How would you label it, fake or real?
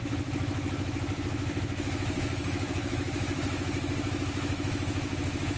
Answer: fake